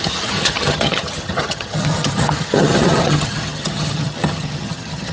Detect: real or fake fake